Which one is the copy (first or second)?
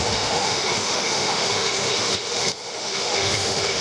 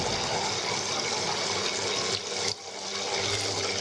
first